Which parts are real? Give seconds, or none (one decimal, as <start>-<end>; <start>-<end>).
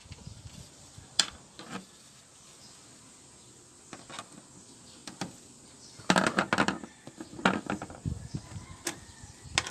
2.0-9.7